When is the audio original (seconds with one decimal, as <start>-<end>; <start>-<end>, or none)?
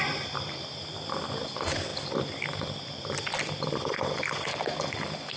0.0-5.4